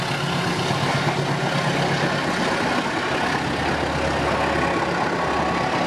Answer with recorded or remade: recorded